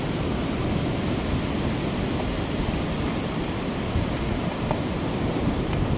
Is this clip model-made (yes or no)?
no